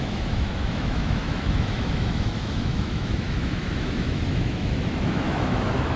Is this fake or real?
fake